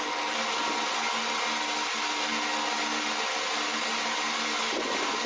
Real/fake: real